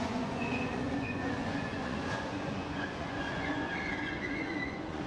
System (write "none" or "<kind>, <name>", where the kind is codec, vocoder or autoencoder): vocoder, Vocos